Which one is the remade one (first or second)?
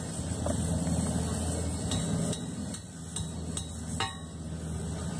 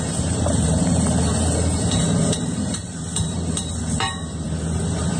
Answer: second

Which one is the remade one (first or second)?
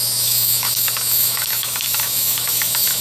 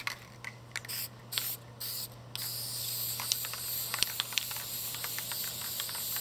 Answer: first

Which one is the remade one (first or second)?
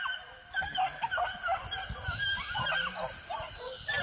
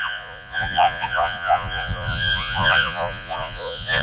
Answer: second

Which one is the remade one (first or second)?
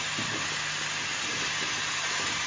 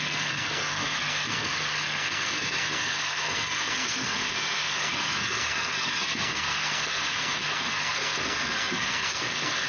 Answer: second